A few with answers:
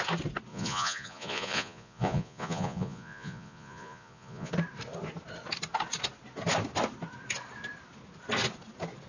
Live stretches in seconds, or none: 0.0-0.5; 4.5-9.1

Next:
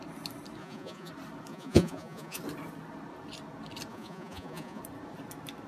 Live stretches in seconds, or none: 0.0-0.6; 1.1-1.5; 2.4-3.9; 4.8-5.7